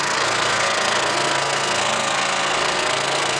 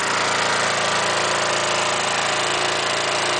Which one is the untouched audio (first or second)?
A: second